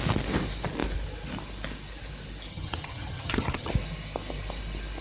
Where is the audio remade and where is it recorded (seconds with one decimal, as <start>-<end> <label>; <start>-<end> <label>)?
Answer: 0.0-2.5 recorded; 2.5-3.7 remade; 3.7-5.0 recorded